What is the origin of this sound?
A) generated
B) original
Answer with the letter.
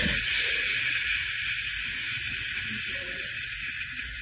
B